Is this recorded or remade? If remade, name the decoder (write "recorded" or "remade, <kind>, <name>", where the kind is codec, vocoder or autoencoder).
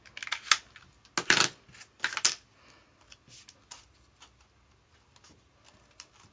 recorded